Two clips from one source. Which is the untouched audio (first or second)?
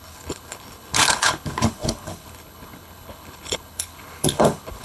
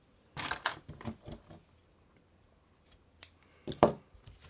second